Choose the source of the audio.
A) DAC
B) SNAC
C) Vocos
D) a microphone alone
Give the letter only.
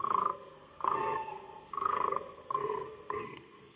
B